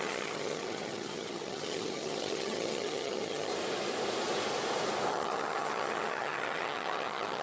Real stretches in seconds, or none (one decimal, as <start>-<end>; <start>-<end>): 3.5-5.1